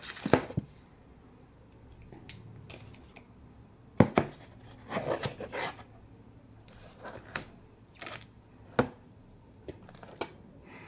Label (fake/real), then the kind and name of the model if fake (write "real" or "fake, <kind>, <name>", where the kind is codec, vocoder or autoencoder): real